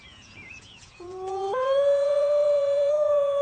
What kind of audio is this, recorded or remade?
remade